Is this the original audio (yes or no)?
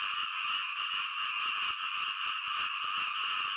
yes